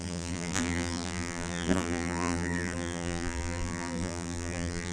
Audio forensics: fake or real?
fake